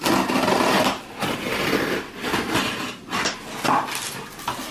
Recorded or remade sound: recorded